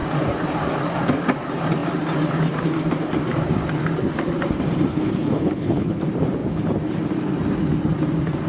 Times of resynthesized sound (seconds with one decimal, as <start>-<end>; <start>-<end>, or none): 4.9-6.0